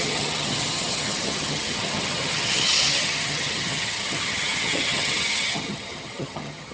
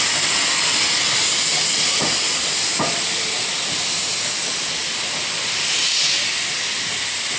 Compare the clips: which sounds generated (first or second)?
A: first